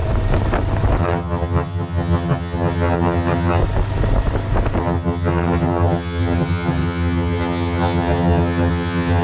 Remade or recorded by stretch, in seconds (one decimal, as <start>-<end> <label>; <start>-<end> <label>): 0.0-1.0 recorded; 1.0-3.6 remade; 3.6-4.8 recorded; 4.8-9.2 remade